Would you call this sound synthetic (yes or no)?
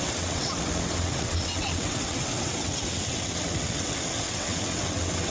yes